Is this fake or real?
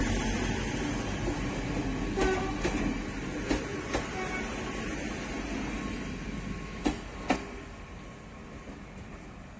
real